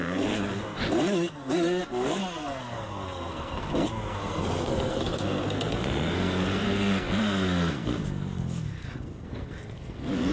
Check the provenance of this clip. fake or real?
fake